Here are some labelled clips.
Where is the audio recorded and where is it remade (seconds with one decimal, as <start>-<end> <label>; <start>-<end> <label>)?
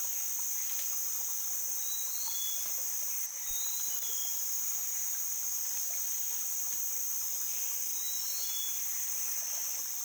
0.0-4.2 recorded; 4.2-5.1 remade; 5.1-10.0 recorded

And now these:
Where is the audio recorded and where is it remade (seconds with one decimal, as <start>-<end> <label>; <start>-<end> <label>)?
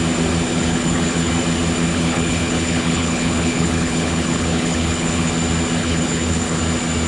0.0-0.5 recorded; 0.5-1.3 remade; 1.3-1.9 recorded; 1.9-5.3 remade; 5.3-5.8 recorded; 5.8-6.6 remade; 6.6-7.1 recorded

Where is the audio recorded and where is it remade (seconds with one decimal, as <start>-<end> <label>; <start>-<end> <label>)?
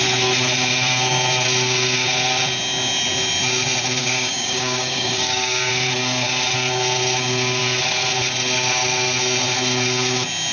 0.0-4.0 recorded; 4.0-5.7 remade; 5.7-10.5 recorded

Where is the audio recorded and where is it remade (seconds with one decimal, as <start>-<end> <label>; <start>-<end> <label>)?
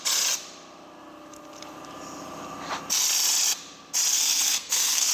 0.0-4.1 recorded; 4.1-5.1 remade